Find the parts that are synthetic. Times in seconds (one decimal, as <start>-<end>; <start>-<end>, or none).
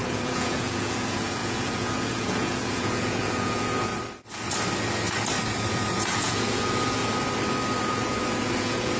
0.0-3.9; 5.7-7.0; 7.8-9.0